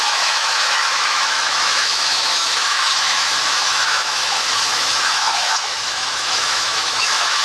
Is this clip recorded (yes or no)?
no